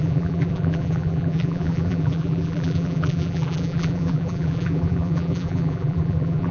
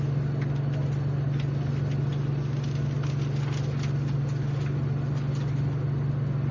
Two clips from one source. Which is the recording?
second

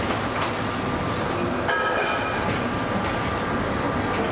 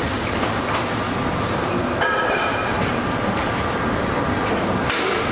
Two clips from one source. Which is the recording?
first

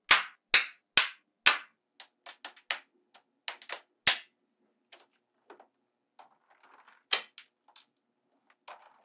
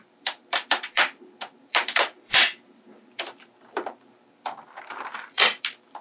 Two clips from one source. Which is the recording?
first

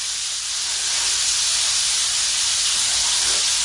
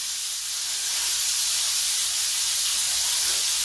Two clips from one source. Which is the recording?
first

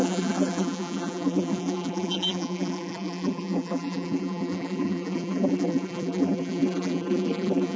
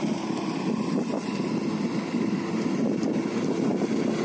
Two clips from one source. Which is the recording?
second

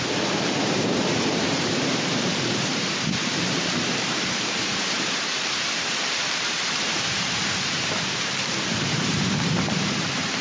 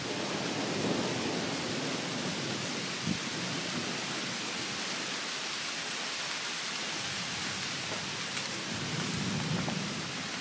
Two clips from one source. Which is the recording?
second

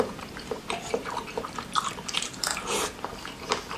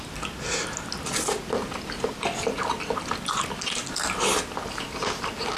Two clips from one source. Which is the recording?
second